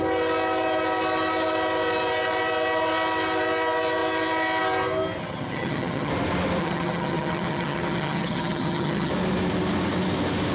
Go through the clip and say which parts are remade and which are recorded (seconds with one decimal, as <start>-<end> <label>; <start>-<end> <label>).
0.0-5.2 recorded; 5.2-6.1 remade; 6.1-6.6 recorded; 6.6-9.1 remade; 9.1-10.5 recorded